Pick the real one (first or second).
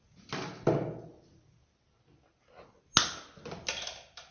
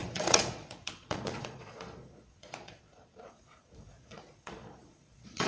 first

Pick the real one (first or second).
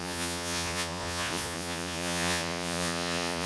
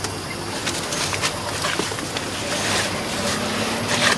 second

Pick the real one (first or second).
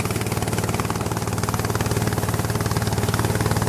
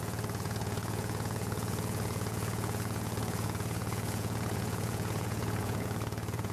first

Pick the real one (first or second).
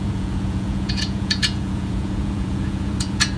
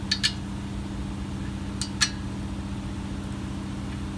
second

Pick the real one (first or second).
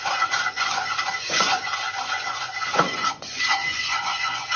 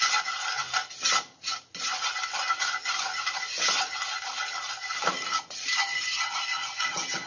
second